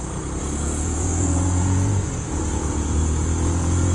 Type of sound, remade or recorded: remade